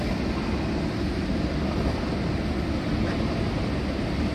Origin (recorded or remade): recorded